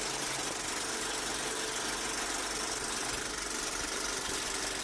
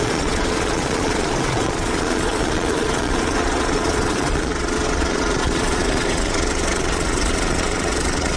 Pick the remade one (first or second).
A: second